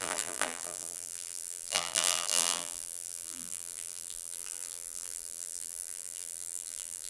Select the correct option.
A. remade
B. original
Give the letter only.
A